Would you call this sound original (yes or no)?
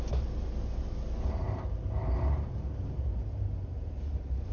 yes